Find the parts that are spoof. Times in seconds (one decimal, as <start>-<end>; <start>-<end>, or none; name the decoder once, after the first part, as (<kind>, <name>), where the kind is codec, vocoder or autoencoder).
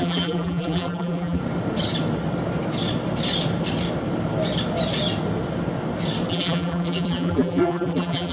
0.0-1.4 (vocoder, BigVGAN v2); 6.3-8.3